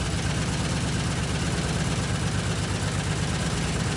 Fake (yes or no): no